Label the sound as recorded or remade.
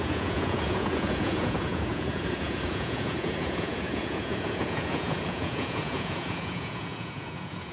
remade